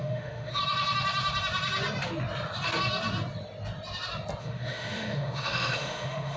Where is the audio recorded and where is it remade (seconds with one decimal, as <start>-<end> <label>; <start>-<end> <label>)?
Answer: 0.0-0.6 remade; 0.6-4.4 recorded; 4.4-6.4 remade